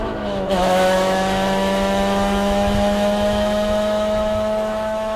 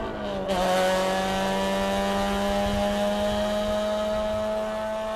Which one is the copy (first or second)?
first